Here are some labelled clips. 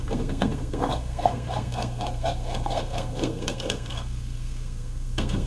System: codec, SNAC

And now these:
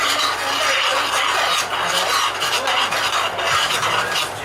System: none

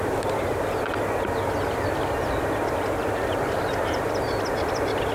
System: none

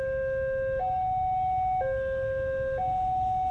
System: none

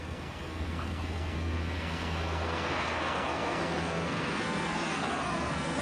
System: codec, SNAC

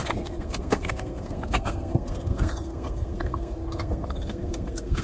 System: codec, SNAC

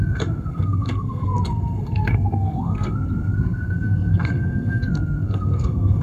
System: codec, SNAC